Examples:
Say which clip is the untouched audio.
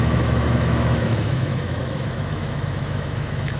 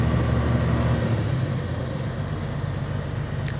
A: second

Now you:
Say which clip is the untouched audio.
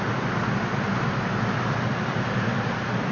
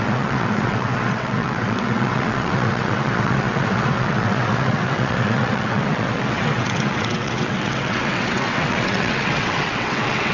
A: first